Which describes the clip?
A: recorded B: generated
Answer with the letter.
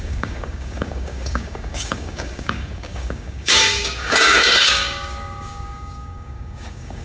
B